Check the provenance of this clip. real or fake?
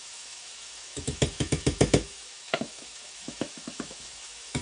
fake